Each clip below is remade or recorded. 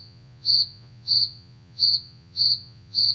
remade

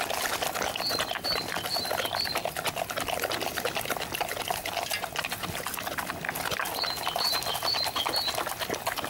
recorded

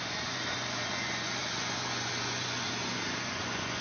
remade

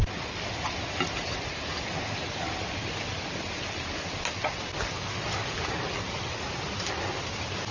recorded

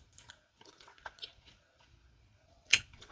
remade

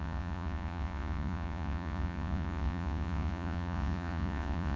remade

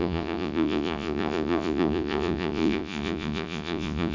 remade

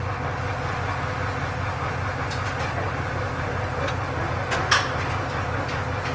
recorded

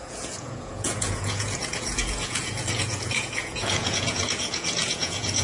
remade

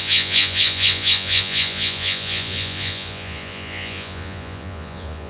remade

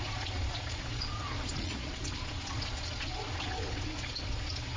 remade